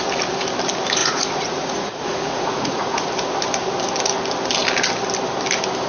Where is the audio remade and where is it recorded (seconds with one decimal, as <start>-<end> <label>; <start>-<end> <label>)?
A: 0.0-1.0 recorded; 1.0-3.1 remade; 3.1-5.9 recorded